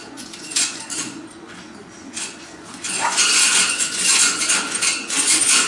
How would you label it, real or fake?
fake